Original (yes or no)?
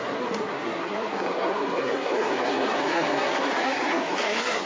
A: no